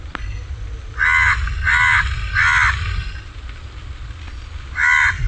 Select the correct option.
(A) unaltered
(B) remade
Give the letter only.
A